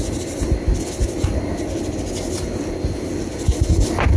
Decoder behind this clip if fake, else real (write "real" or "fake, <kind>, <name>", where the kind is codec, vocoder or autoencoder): real